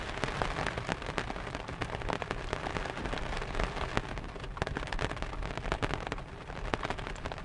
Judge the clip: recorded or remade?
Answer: recorded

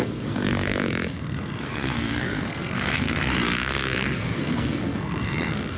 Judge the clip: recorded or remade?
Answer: remade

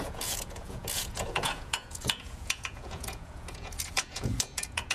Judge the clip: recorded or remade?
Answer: remade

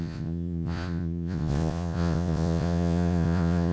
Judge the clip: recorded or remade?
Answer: remade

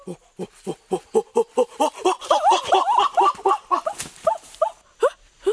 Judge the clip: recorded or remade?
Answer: recorded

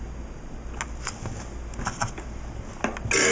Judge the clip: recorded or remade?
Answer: recorded